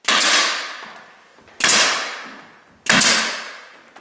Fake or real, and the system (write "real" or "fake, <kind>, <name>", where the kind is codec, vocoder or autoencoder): real